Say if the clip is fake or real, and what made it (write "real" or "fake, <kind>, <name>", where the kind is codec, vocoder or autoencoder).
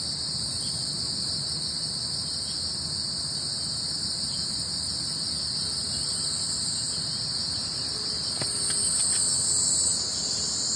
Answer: real